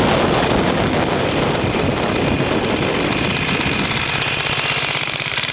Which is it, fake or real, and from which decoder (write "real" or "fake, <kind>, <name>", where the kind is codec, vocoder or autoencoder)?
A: real